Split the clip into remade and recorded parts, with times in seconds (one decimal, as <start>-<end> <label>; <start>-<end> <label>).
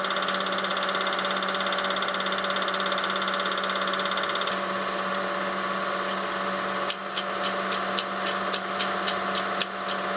0.0-10.2 recorded